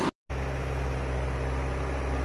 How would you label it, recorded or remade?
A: recorded